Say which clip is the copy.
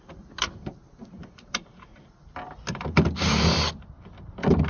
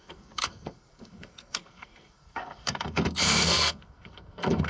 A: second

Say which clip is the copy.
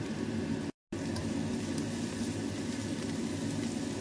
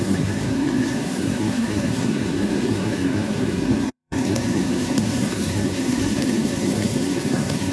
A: second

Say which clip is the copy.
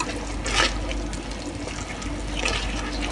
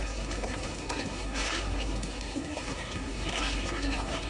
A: second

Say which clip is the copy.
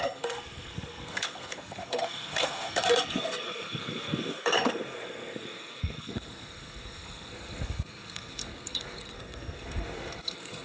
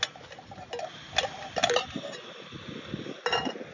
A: first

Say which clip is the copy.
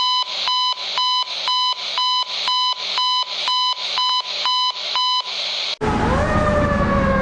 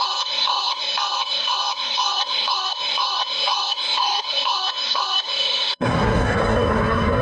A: second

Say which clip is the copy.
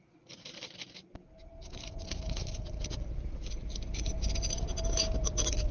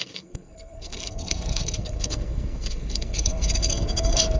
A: second